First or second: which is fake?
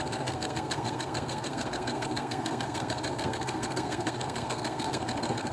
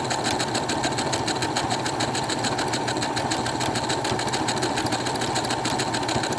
first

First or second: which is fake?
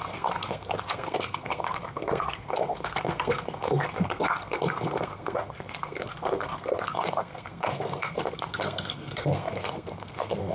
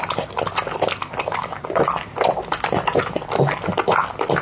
first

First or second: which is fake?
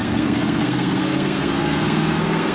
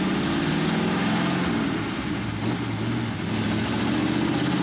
first